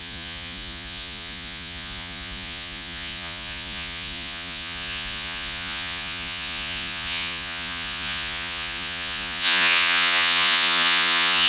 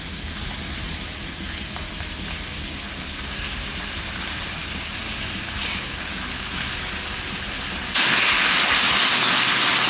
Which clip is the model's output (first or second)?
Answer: first